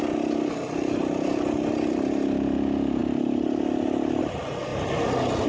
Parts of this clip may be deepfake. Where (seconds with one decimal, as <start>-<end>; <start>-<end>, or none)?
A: none